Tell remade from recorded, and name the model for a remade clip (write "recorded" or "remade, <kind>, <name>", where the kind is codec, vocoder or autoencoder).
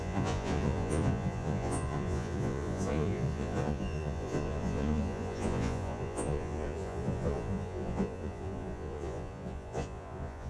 remade, vocoder, Vocos